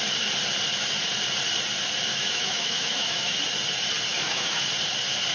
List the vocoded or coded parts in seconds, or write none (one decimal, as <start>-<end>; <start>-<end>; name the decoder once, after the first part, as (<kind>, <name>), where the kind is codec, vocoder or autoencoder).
2.1-3.4 (autoencoder, DAC-VAE); 4.1-4.7